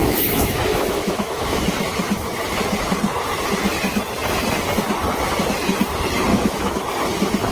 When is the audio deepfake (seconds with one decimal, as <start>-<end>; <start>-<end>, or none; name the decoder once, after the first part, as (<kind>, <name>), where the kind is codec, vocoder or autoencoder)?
0.0-1.6 (autoencoder, DAC-VAE); 6.3-6.9